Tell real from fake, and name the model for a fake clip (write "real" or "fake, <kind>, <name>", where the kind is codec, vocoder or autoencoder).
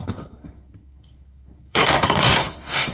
fake, codec, SNAC